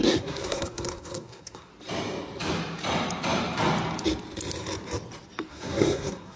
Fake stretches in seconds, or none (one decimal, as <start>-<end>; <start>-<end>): 0.0-1.7; 5.5-6.4